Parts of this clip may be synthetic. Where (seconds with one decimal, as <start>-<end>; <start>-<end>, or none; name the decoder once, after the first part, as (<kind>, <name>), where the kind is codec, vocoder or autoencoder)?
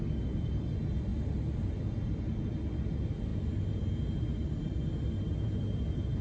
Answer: none